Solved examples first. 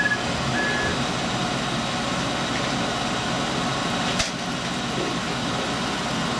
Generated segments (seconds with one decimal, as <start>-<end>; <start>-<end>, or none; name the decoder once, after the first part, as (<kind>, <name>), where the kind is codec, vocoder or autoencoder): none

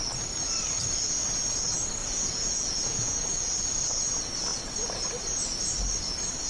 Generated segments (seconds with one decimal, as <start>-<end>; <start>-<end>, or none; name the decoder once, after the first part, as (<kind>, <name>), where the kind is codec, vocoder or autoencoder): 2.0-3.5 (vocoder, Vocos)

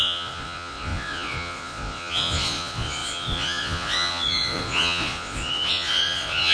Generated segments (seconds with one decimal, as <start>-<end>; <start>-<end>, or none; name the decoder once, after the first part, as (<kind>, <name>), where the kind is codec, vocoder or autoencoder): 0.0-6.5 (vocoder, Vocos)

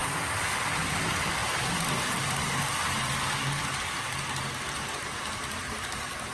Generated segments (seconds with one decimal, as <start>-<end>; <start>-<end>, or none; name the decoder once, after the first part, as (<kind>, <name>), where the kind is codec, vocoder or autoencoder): none

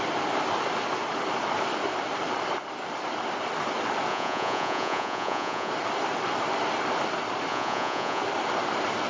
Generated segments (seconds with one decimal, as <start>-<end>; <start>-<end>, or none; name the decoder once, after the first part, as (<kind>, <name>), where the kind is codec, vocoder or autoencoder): 4.1-5.7 (vocoder, Vocos); 7.5-8.2